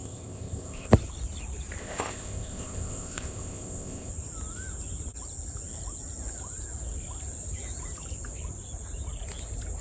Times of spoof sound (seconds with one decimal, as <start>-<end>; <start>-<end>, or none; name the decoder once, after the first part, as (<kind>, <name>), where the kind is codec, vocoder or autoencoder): 0.0-0.9 (codec, ZipCodec); 1.8-4.1